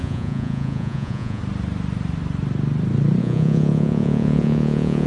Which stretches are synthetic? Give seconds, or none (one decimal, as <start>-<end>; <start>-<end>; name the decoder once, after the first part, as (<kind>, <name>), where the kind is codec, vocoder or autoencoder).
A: 0.0-1.4 (vocoder, Vocos); 3.2-5.1